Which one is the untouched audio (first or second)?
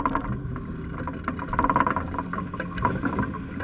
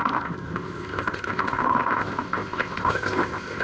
first